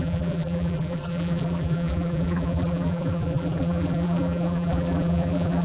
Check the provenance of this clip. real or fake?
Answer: fake